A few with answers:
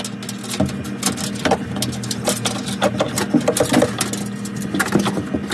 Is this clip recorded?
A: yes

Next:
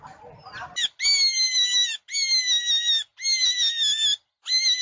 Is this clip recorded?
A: yes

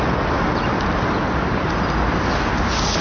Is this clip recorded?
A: yes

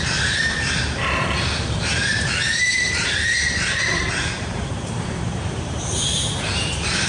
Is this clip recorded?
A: no